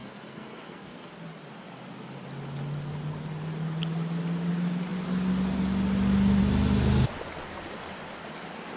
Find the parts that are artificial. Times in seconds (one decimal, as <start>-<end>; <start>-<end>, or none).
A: 0.0-1.1